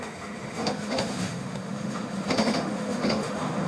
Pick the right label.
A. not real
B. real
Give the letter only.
A